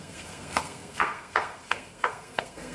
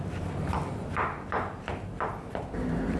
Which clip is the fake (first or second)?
first